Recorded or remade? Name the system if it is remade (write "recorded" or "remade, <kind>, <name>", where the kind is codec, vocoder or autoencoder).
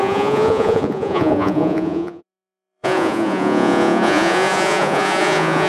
remade, vocoder, Vocos